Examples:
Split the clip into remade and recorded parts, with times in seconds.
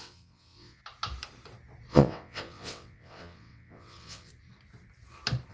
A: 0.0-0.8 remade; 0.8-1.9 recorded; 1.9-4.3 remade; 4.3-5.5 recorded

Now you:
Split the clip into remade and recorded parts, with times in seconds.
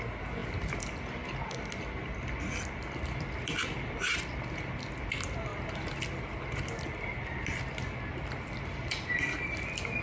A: 0.0-10.0 recorded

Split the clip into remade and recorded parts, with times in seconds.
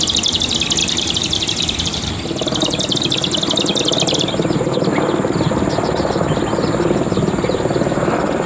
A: 0.0-0.8 recorded; 0.8-2.1 remade; 2.1-8.5 recorded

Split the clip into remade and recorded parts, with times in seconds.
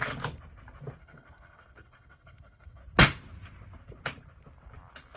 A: 0.0-1.0 recorded; 1.0-2.8 remade; 2.8-5.2 recorded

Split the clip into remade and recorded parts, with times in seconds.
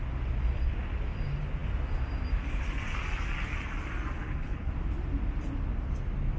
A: 0.0-4.2 recorded; 4.2-4.7 remade; 4.7-6.4 recorded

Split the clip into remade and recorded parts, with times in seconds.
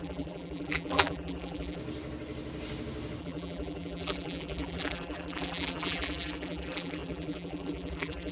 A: 0.0-1.8 remade; 1.8-3.2 recorded; 3.2-8.3 remade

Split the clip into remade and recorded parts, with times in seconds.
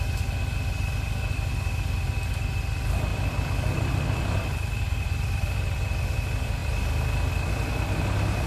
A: 0.0-3.1 recorded; 3.1-5.6 remade; 5.6-8.5 recorded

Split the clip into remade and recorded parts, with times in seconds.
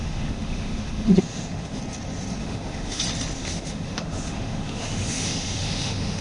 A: 0.0-1.8 remade; 1.8-2.4 recorded; 2.4-3.0 remade; 3.0-3.4 recorded; 3.4-6.2 remade